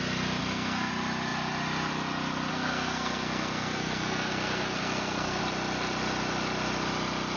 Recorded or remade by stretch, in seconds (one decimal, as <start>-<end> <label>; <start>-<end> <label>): 0.0-0.4 recorded; 0.4-0.9 remade; 0.9-2.5 recorded; 2.5-5.4 remade; 5.4-7.4 recorded